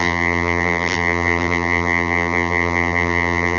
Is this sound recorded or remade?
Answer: remade